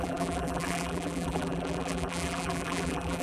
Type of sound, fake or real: fake